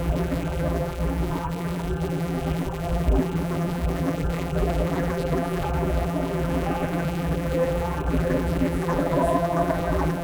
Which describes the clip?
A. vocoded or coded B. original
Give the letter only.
A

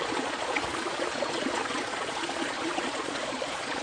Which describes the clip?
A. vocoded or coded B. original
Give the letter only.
A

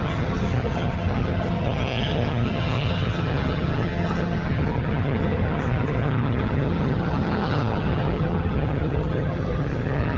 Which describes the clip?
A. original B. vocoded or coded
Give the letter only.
B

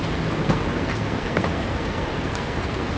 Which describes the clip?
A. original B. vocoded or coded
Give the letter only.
B